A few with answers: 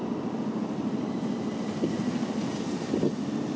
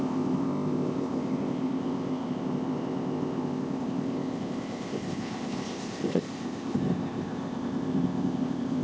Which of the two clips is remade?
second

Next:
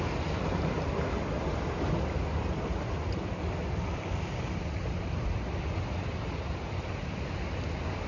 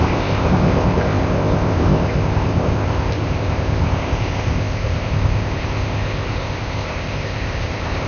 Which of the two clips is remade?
second